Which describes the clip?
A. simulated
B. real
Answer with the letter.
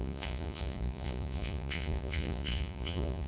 A